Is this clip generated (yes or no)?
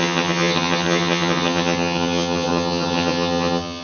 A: yes